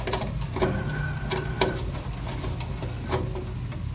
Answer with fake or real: real